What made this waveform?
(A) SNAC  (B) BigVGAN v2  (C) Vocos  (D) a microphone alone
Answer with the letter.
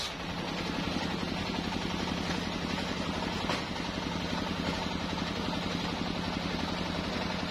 D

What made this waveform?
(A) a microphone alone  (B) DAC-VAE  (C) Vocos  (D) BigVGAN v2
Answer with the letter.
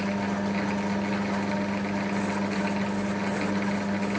A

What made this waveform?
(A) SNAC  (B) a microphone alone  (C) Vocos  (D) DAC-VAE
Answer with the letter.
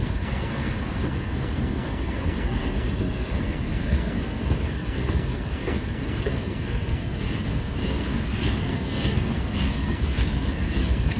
A